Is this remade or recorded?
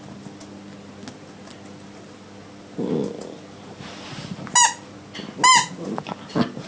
recorded